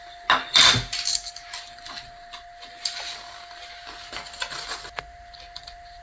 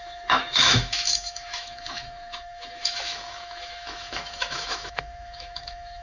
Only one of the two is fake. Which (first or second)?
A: second